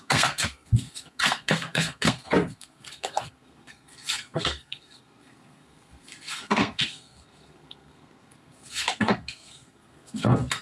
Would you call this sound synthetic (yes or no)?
yes